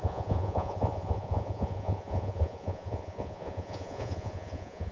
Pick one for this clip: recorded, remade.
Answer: remade